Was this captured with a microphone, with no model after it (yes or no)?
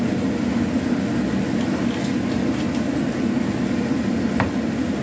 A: yes